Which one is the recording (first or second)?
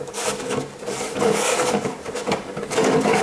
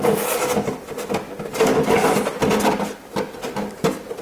second